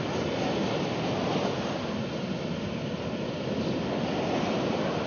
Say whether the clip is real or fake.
real